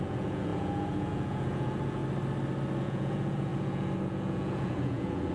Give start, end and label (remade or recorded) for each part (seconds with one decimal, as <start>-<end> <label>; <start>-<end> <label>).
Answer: 0.0-2.0 remade; 2.0-2.8 recorded; 2.8-5.3 remade